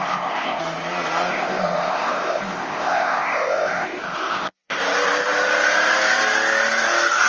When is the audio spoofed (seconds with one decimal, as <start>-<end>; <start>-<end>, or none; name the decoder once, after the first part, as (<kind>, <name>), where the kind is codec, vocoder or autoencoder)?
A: 0.0-0.6 (codec, ZipCodec); 1.3-4.8